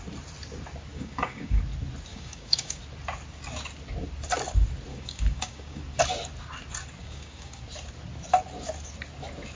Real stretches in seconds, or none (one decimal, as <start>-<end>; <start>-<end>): 0.0-0.9; 1.6-2.1; 2.8-4.9; 5.8-7.0; 7.6-9.6